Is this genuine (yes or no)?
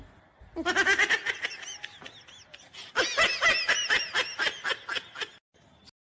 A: yes